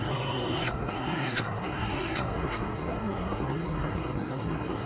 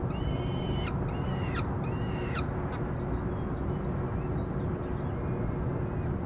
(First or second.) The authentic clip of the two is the second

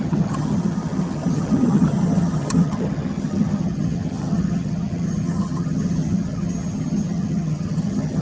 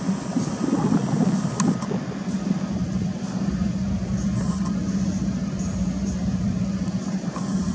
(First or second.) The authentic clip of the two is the second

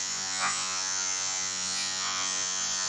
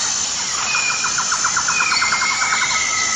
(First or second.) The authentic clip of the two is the second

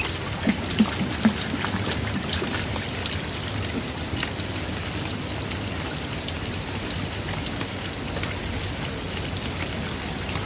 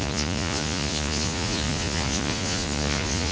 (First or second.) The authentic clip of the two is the first